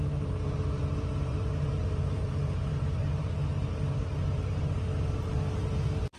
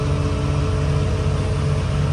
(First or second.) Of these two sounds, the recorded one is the second